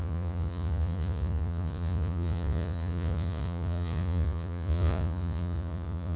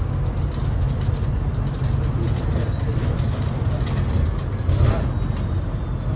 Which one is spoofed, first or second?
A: first